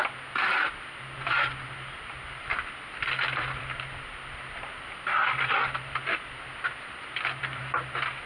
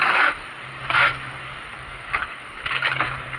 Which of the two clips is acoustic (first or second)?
first